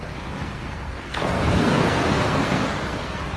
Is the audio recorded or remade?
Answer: remade